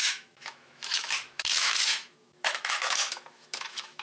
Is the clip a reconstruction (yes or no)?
yes